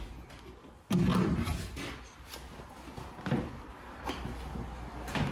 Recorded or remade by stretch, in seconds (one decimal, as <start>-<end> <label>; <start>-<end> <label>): 0.0-5.3 recorded